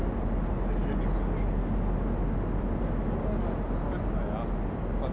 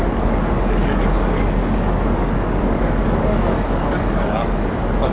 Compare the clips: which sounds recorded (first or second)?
first